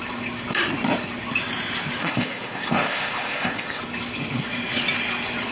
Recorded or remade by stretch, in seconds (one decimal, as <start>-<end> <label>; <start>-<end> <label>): 0.0-2.0 recorded; 2.0-3.8 remade; 3.8-5.5 recorded